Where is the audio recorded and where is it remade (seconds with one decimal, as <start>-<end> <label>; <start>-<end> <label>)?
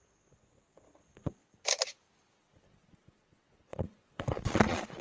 0.0-1.4 remade; 1.4-2.4 recorded; 2.4-5.0 remade